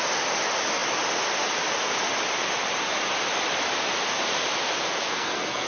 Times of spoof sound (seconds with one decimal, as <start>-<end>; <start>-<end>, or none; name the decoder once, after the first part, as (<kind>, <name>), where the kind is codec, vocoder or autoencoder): 5.0-5.7 (codec, SNAC)